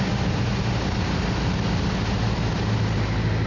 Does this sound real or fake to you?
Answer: real